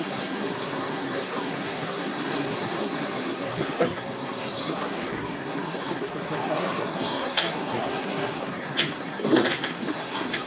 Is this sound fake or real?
fake